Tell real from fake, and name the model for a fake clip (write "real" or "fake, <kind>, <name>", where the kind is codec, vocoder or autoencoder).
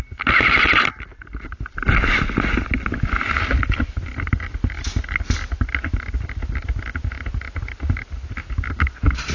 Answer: real